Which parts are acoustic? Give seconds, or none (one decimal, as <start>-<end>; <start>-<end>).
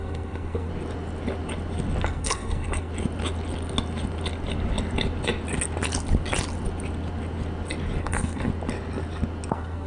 0.7-2.0; 2.9-8.0; 8.5-9.5